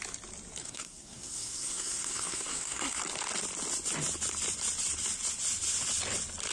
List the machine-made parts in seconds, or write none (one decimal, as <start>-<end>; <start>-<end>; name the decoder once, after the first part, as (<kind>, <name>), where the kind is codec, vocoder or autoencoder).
0.6-3.0 (codec, SNAC)